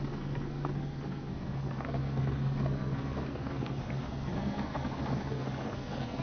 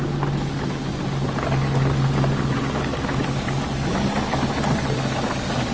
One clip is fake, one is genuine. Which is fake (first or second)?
first